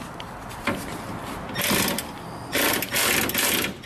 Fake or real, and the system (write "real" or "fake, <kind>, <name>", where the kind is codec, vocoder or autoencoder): real